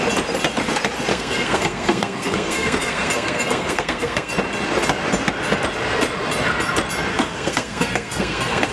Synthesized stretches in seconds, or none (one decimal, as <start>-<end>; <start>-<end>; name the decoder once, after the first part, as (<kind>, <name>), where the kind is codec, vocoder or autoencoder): 1.1-4.3 (codec, SNAC); 7.1-8.7